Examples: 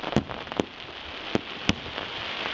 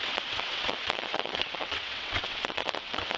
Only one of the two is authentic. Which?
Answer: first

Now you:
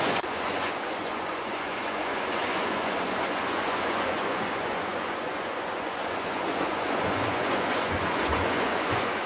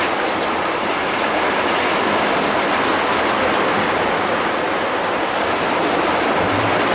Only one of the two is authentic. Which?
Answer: second